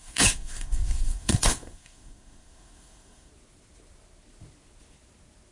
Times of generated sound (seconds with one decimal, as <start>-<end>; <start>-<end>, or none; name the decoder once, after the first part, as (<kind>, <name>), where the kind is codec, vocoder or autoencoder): 0.0-3.3 (codec, SNAC)